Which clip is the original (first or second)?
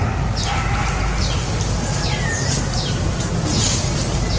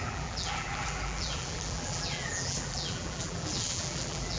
first